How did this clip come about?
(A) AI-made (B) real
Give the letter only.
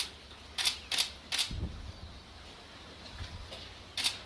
B